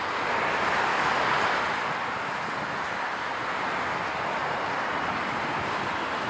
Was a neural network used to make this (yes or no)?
no